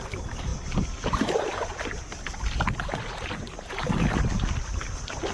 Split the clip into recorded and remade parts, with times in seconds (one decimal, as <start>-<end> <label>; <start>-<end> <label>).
0.0-5.3 recorded